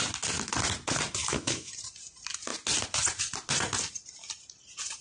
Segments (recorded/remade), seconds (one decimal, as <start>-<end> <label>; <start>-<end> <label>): 0.0-1.2 recorded; 1.2-1.7 remade; 1.7-5.0 recorded